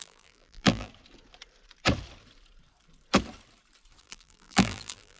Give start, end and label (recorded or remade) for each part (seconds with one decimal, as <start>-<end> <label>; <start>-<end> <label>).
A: 0.0-0.9 remade; 0.9-4.0 recorded; 4.0-5.2 remade